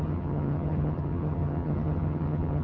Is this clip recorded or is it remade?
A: remade